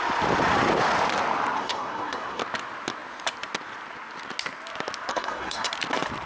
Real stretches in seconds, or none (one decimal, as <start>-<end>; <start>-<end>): 0.0-1.6; 2.4-5.1; 5.7-6.3